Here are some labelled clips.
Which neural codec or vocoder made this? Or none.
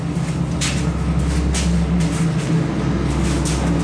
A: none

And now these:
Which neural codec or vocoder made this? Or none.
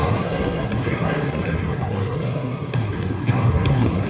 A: codec, SNAC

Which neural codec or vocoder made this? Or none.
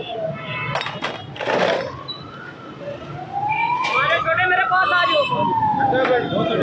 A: none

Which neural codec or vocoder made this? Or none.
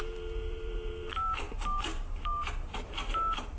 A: vocoder, BigVGAN v2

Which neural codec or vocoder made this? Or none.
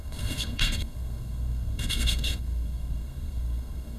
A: codec, SNAC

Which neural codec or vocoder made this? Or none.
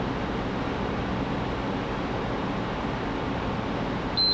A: none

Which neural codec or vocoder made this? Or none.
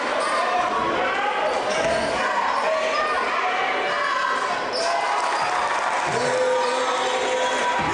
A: none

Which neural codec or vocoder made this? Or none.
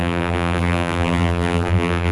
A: vocoder, BigVGAN v2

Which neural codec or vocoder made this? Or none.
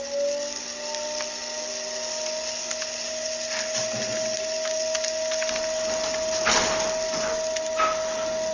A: none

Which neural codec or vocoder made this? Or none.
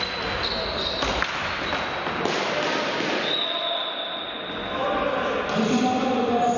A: none